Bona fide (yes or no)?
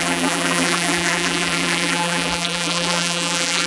no